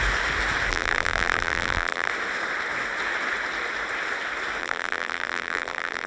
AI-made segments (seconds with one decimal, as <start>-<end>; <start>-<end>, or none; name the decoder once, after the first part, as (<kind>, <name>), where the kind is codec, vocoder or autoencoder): 0.7-2.1 (vocoder, BigVGAN v2); 4.6-6.1